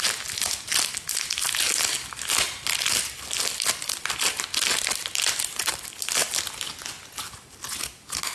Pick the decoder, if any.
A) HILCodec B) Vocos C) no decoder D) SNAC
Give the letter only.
C